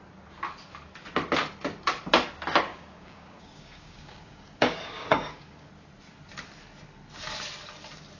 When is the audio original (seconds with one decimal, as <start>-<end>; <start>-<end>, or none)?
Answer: 0.0-2.7; 5.7-8.2